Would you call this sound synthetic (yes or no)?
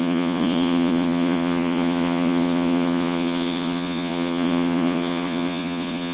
yes